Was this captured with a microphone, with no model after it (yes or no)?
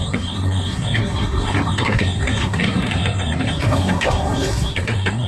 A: no